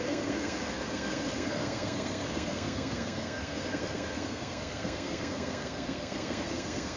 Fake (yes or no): yes